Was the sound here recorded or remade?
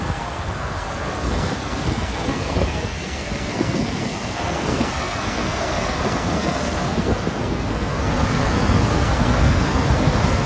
remade